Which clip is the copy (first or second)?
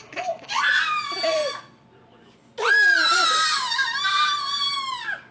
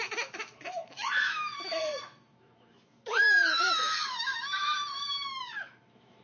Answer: second